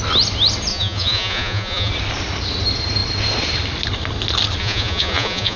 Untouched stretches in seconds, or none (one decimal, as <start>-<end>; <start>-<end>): 0.0-0.7; 1.9-4.6